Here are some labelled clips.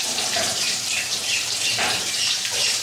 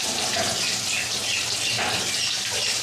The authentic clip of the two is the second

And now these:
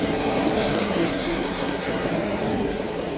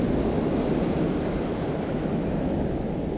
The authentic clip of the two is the second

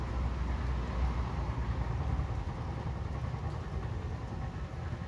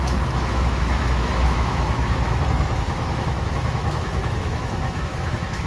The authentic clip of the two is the first